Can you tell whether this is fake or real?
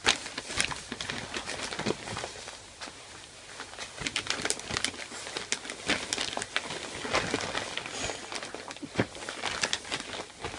real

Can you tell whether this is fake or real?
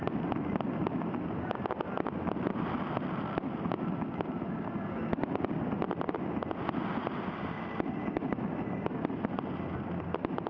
real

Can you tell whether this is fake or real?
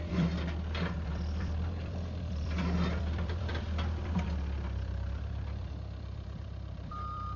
fake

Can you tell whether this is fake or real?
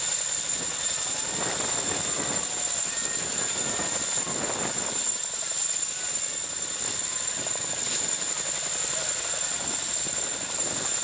real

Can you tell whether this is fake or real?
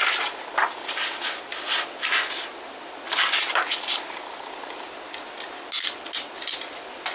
real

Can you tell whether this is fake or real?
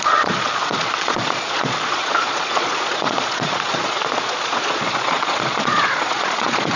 fake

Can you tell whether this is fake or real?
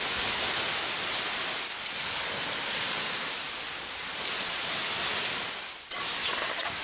real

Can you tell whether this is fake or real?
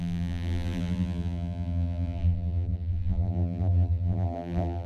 fake